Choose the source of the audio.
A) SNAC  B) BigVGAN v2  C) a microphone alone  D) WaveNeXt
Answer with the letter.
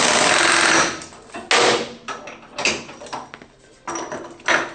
C